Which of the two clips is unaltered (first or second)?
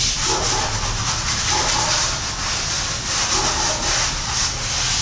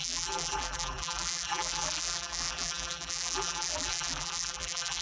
first